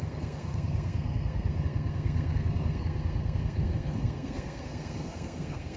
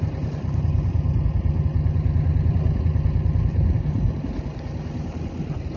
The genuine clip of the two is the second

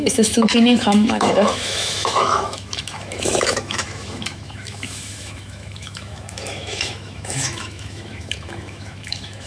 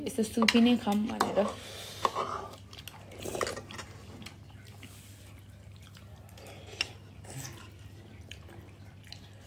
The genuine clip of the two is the second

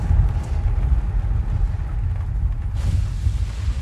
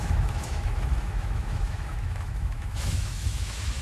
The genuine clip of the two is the first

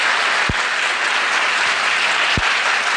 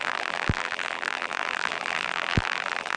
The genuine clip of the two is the first